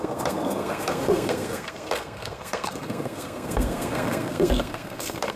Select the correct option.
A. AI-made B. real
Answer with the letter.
A